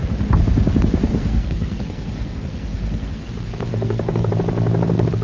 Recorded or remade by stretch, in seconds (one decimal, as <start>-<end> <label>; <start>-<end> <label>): 0.0-1.1 recorded; 1.1-3.3 remade; 3.3-3.7 recorded; 3.7-4.3 remade; 4.3-5.2 recorded